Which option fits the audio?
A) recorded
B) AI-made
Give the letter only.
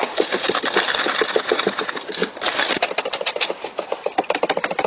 A